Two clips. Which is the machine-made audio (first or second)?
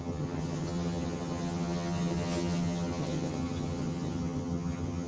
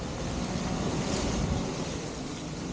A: first